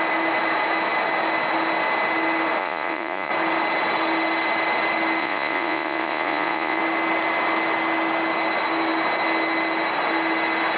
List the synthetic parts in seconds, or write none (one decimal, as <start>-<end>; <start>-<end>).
2.6-3.3; 5.2-6.8